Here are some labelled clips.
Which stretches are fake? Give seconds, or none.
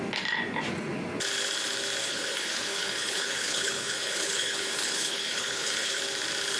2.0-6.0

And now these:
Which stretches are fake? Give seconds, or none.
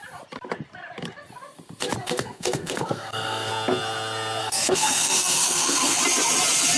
2.0-3.5; 4.4-6.0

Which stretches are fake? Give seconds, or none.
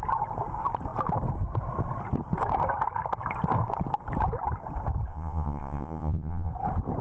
5.1-6.5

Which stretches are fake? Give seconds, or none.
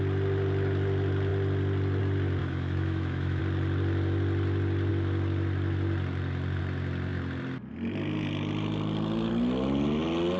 2.4-3.4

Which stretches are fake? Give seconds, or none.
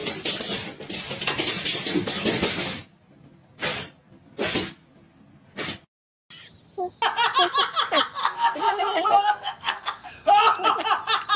8.2-10.3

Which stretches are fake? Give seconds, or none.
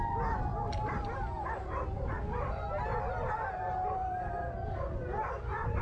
0.5-2.1; 3.2-4.4; 5.0-5.8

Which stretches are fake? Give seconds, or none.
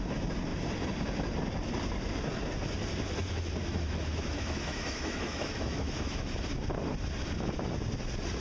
3.6-6.3